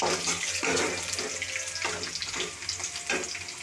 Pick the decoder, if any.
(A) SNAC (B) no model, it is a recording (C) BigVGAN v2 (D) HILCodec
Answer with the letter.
B